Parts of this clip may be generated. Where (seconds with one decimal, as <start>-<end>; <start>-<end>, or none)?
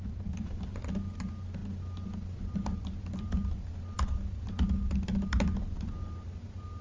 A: none